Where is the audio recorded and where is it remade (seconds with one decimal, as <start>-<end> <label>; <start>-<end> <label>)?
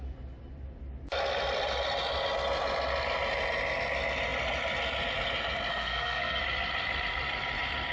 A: 0.0-5.7 recorded; 5.7-6.4 remade; 6.4-7.9 recorded